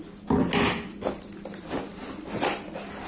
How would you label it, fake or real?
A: real